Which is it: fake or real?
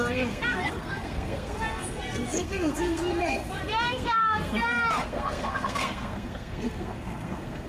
fake